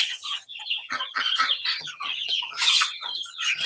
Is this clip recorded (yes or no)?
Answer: no